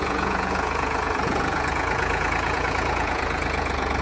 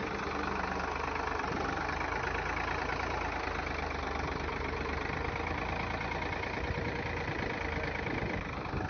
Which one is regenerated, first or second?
first